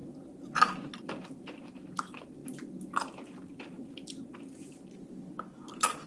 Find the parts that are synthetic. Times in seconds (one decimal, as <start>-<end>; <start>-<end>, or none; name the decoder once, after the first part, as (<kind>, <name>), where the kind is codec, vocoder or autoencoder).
none